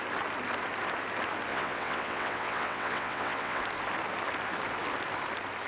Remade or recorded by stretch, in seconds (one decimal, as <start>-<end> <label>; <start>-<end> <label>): 0.0-1.5 recorded; 1.5-3.6 remade; 3.6-5.7 recorded